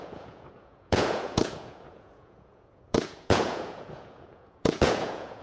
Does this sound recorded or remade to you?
remade